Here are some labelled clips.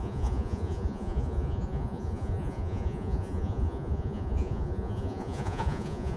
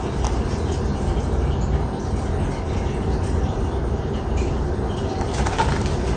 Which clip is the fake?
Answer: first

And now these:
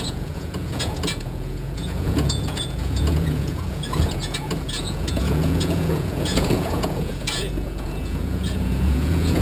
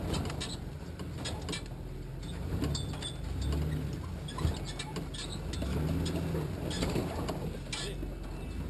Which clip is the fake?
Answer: first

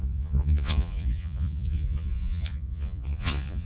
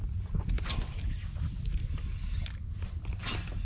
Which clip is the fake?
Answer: first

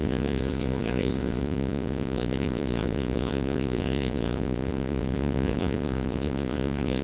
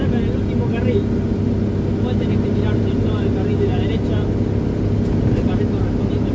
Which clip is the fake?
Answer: first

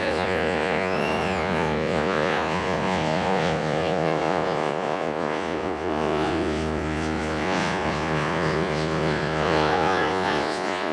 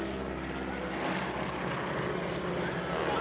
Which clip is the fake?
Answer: first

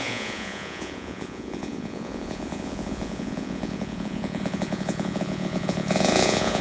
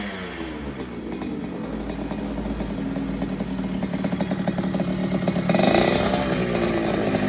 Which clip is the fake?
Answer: first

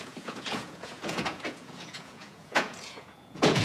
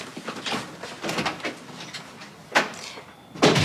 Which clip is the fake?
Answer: first